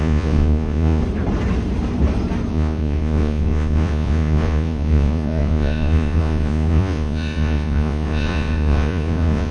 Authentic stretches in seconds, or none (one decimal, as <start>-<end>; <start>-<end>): 1.0-2.5